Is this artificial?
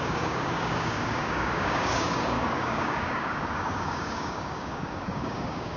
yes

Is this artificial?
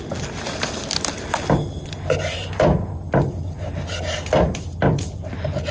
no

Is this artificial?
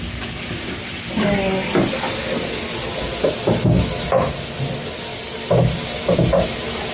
no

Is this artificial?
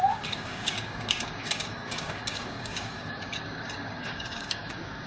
yes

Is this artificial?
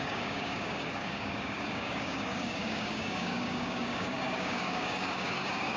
yes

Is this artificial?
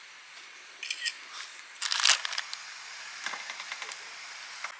no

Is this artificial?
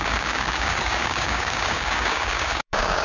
yes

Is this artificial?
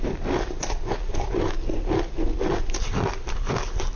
no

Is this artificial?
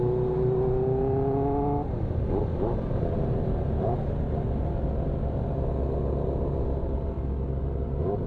no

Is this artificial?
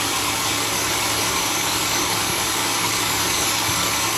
yes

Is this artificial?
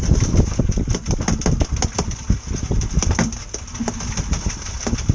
no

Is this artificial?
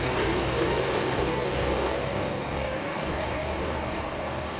yes